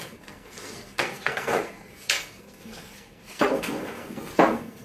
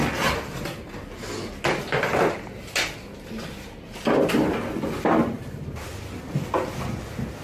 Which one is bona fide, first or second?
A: second